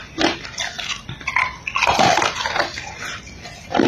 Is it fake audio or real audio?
real